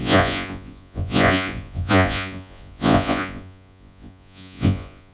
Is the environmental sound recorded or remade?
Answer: remade